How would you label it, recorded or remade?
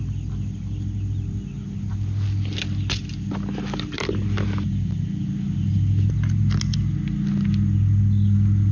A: recorded